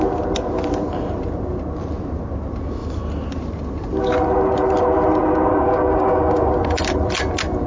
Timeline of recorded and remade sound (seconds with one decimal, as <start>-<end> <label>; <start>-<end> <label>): 0.0-5.5 recorded; 5.5-6.5 remade; 6.5-7.7 recorded